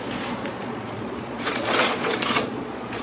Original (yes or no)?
no